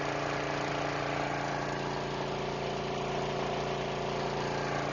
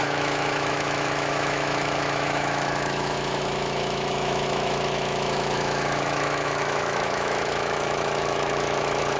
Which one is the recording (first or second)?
first